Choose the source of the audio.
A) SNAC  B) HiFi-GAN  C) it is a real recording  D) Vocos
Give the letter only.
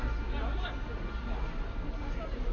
C